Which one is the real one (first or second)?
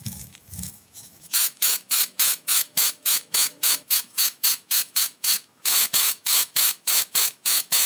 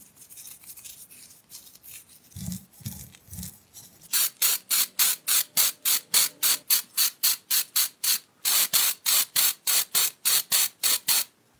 second